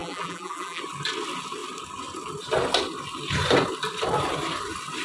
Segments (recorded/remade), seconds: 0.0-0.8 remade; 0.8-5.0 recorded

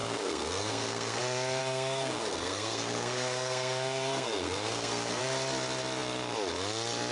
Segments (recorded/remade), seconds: 0.0-1.2 remade; 1.2-1.6 recorded; 1.6-5.2 remade; 5.2-7.1 recorded